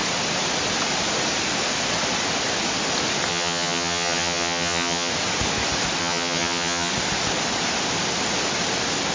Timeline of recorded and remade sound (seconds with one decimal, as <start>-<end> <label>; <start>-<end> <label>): 0.0-3.3 recorded; 3.3-5.1 remade; 5.1-6.0 recorded; 6.0-6.9 remade; 6.9-9.1 recorded